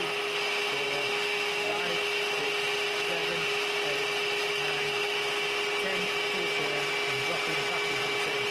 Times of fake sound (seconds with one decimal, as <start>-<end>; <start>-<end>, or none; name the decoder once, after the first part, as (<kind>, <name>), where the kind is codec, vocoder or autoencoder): 1.1-1.8 (autoencoder, DAC-VAE)